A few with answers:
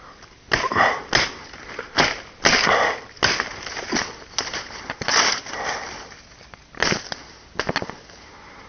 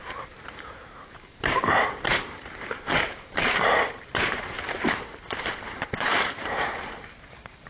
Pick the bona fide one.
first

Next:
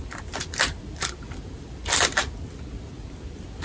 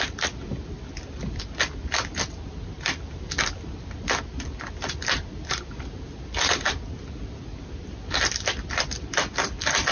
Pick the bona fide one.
second